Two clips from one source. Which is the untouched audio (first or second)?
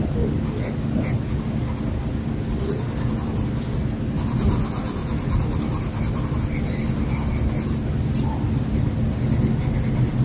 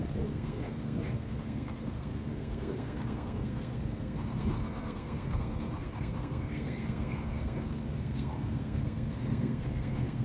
first